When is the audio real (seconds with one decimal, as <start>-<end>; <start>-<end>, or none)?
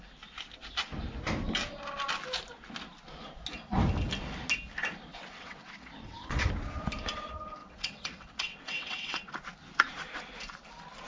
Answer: 0.0-5.1; 6.5-7.6; 9.3-11.1